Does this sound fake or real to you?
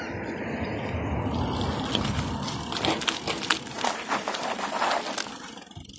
real